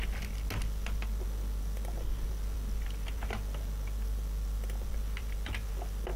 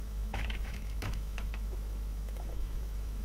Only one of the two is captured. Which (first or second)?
first